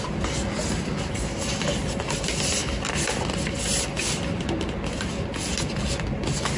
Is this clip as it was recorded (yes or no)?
yes